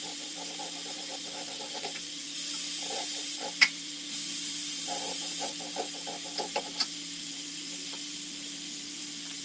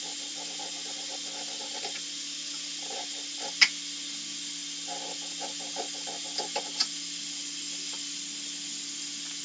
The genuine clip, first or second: second